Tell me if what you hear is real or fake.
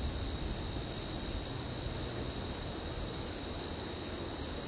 real